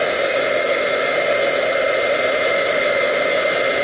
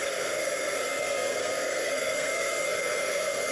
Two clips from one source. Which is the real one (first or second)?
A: first